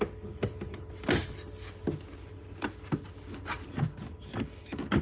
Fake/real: real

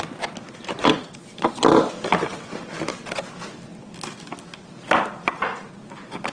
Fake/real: real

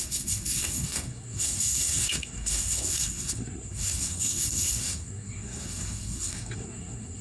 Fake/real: fake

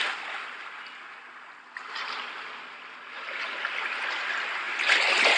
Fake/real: real